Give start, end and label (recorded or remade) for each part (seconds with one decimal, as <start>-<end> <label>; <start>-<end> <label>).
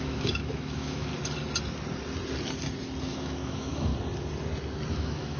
0.0-1.1 remade; 1.1-3.0 recorded; 3.0-3.9 remade; 3.9-4.9 recorded; 4.9-5.4 remade